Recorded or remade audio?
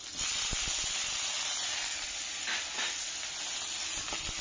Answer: recorded